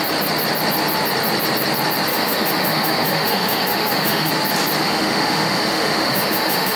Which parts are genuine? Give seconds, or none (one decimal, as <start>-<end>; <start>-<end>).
0.0-2.1; 4.3-4.8